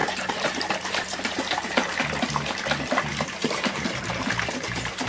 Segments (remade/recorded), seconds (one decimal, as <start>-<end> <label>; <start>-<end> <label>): 0.0-2.0 remade; 2.0-3.4 recorded; 3.4-5.1 remade